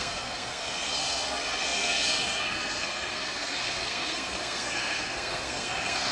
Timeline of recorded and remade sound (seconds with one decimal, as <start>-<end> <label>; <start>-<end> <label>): 0.0-6.1 remade